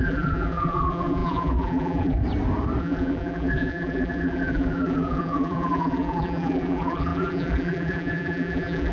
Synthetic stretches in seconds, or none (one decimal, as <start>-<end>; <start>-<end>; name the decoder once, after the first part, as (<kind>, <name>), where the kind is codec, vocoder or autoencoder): 0.0-2.2 (vocoder, BigVGAN v2); 2.8-8.9